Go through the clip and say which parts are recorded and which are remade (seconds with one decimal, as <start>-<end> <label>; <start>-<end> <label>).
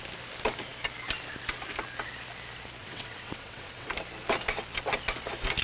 0.0-2.8 recorded; 2.8-3.9 remade; 3.9-5.6 recorded